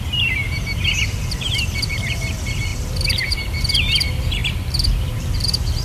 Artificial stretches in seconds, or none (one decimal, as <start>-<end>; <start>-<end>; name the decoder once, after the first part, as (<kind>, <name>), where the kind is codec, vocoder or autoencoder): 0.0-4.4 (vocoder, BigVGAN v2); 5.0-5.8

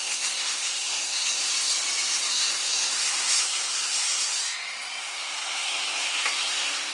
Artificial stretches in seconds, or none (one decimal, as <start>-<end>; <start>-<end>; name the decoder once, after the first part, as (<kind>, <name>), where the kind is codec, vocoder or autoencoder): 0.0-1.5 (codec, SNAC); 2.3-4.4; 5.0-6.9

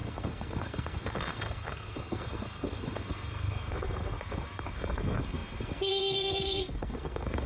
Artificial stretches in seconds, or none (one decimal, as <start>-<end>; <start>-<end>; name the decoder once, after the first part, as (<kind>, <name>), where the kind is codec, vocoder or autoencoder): 0.0-7.5 (codec, SNAC)